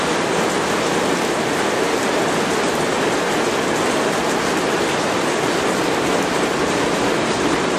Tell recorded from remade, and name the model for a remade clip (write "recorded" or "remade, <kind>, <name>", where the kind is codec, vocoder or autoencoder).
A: recorded